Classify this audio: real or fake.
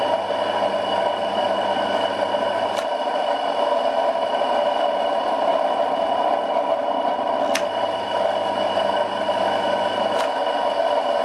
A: real